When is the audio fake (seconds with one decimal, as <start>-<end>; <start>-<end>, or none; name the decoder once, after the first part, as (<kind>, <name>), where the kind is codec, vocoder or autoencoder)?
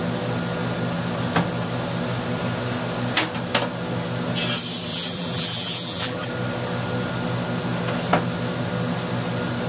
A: 4.9-6.3 (vocoder, BigVGAN v2)